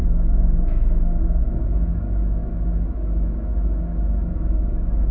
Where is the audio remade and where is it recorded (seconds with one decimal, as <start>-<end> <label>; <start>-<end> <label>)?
0.0-1.4 recorded; 1.4-5.1 remade